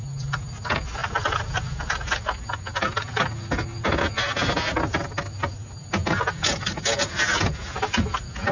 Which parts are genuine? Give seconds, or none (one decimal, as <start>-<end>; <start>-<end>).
0.0-8.5